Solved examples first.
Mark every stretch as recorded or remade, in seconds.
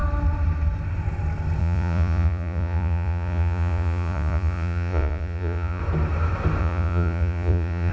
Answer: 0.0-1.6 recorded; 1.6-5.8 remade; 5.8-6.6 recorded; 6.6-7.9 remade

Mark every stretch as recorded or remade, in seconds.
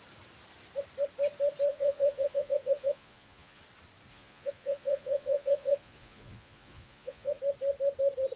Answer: 0.0-1.7 recorded; 1.7-3.6 remade; 3.6-4.1 recorded; 4.1-7.4 remade; 7.4-8.4 recorded